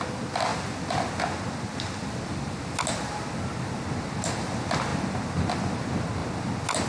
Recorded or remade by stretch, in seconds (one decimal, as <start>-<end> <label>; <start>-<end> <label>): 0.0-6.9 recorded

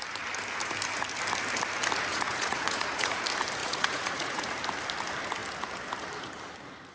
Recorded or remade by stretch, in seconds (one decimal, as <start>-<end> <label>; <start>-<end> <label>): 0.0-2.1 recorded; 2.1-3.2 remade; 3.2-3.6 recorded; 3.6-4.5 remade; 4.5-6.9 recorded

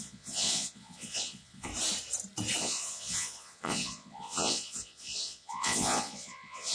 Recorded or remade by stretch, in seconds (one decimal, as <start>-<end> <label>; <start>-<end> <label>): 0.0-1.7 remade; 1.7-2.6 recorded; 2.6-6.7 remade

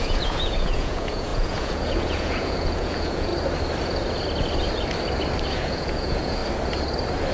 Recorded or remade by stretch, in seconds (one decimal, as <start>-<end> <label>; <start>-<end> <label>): 0.0-3.3 remade; 3.3-5.5 recorded; 5.5-6.4 remade; 6.4-7.3 recorded

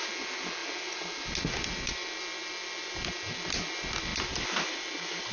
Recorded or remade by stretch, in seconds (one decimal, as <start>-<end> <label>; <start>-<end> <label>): 0.0-5.3 recorded

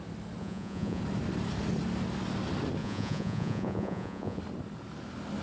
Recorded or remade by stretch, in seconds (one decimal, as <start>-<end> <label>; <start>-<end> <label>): 0.0-0.4 recorded; 0.4-1.0 remade; 1.0-2.8 recorded; 2.8-4.4 remade; 4.4-5.4 recorded